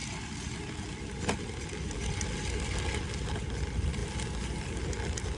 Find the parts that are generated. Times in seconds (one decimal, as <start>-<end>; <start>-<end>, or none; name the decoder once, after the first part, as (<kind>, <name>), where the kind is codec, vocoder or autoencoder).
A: none

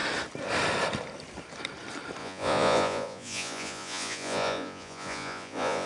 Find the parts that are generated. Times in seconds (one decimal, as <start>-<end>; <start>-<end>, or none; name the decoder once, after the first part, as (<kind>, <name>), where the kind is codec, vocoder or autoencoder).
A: 2.2-5.9 (vocoder, Vocos)

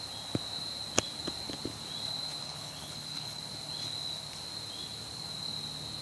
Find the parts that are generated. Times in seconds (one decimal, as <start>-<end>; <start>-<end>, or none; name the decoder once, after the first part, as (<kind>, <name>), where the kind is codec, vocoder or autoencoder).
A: 2.4-3.4 (codec, HILCodec)